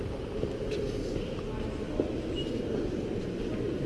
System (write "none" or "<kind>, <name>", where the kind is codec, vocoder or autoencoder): none